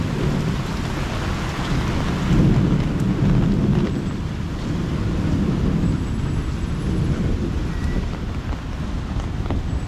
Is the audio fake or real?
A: real